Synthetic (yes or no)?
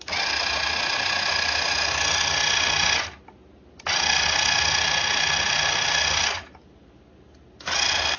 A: no